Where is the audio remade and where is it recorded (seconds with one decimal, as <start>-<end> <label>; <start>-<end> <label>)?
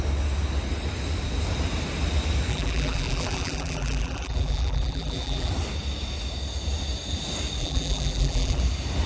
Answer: 0.0-2.5 recorded; 2.5-5.5 remade; 5.5-7.6 recorded; 7.6-8.6 remade; 8.6-9.1 recorded